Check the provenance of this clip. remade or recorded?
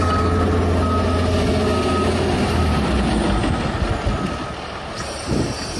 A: recorded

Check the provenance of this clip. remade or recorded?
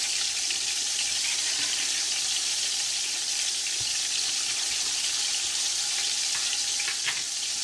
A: remade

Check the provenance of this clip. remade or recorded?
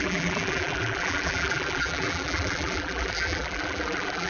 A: remade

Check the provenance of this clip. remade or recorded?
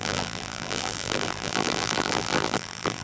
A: remade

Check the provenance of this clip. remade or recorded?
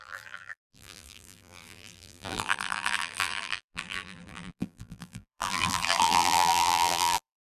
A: remade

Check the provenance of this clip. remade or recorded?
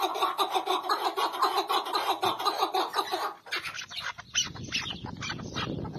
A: recorded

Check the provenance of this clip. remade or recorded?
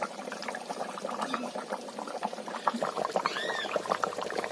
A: remade